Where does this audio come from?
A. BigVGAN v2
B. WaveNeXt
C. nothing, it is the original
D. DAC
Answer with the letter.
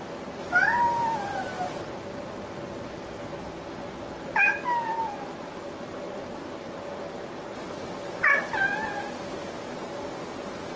C